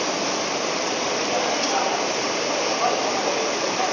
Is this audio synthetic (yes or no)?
no